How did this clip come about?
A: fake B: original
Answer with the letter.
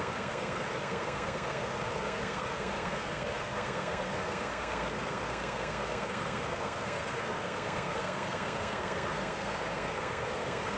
A